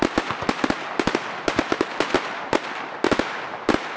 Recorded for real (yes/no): yes